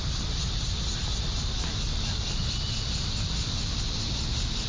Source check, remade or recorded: recorded